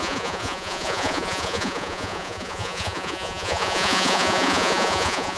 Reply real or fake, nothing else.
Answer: fake